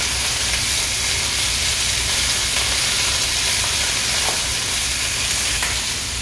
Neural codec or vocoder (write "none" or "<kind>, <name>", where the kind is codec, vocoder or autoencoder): none